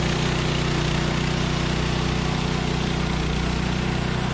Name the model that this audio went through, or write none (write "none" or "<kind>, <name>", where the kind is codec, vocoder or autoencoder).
none